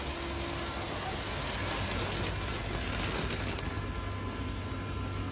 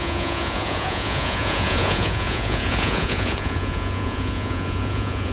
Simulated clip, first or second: second